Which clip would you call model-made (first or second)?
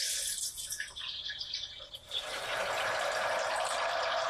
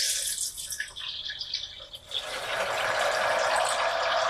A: first